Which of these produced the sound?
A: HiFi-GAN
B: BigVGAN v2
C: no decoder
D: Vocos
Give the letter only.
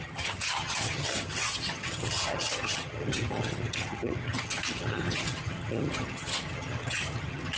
A